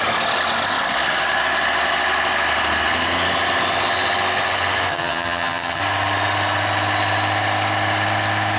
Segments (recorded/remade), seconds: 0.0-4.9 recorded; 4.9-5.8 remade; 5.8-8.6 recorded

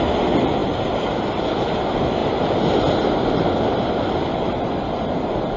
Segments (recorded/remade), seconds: 0.0-5.6 recorded